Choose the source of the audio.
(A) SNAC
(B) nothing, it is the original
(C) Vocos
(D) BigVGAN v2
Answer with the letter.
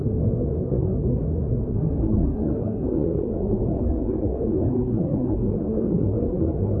A